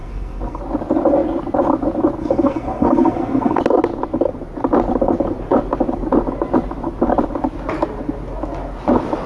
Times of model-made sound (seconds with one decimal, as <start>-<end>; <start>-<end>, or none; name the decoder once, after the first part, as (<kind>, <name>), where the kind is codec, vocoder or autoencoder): 0.0-0.6 (codec, SNAC); 2.2-3.6